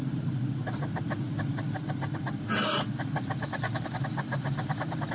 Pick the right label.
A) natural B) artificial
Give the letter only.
A